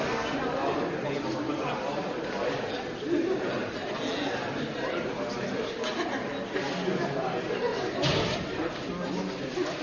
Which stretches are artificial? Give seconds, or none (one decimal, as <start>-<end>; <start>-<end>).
none